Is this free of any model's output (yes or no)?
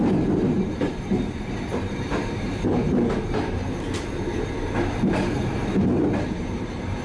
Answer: no